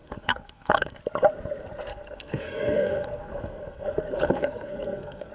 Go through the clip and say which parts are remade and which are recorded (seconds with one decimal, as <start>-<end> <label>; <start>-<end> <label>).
0.0-1.0 remade; 1.0-1.9 recorded; 1.9-5.3 remade